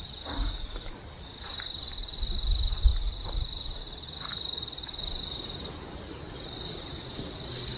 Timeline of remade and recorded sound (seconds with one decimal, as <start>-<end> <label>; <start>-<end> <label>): 0.0-7.8 recorded

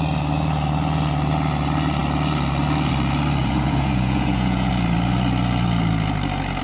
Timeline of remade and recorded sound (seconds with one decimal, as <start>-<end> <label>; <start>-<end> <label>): 0.0-3.4 recorded; 3.4-4.7 remade; 4.7-6.6 recorded

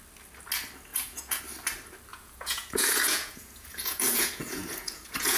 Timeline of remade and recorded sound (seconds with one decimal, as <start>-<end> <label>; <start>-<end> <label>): 0.0-0.9 recorded; 0.9-1.4 remade; 1.4-2.1 recorded; 2.1-5.4 remade

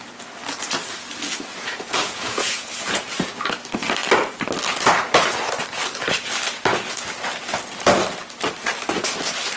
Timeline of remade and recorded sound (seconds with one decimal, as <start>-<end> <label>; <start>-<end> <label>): 0.0-1.5 recorded; 1.5-3.1 remade; 3.1-9.6 recorded

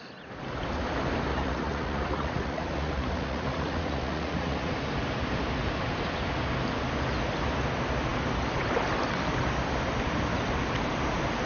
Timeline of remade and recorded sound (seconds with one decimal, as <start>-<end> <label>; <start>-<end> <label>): 0.0-1.3 recorded; 1.3-4.7 remade; 4.7-11.5 recorded

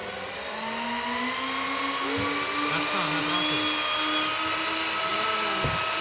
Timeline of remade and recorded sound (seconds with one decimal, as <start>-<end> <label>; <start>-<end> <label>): 0.0-6.0 recorded

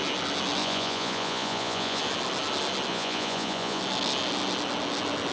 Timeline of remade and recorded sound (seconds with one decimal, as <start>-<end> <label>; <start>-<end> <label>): 0.0-0.6 recorded; 0.6-2.0 remade; 2.0-2.9 recorded; 2.9-3.8 remade; 3.8-5.3 recorded

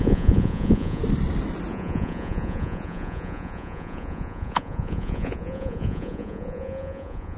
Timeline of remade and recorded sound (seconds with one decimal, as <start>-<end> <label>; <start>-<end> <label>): 0.0-1.0 remade; 1.0-1.7 recorded; 1.7-7.4 remade